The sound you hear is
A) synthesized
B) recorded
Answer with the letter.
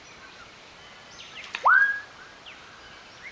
B